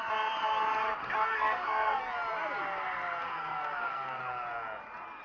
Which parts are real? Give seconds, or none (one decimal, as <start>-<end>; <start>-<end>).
0.0-1.3; 2.0-3.2; 4.2-5.2